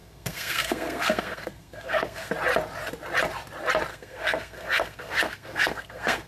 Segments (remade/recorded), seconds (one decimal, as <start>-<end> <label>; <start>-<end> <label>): 0.0-2.3 remade; 2.3-3.9 recorded; 3.9-6.3 remade